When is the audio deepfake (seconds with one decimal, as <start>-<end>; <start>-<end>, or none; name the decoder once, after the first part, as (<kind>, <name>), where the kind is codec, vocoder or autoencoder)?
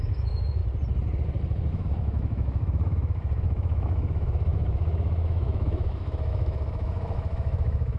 0.0-0.6 (autoencoder, DAC-VAE); 1.7-8.0